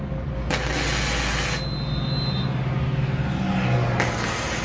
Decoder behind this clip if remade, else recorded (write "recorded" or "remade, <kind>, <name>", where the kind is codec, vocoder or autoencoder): recorded